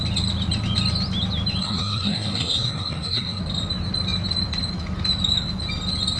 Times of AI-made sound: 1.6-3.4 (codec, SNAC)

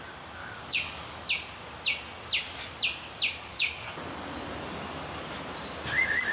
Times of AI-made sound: 0.4-1.3 (codec, DAC); 3.3-4.5